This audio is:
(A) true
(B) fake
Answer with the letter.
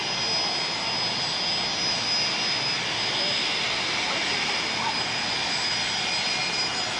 A